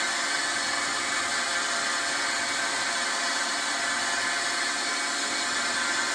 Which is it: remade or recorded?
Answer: recorded